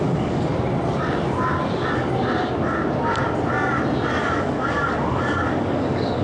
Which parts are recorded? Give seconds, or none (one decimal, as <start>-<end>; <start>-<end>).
0.5-4.2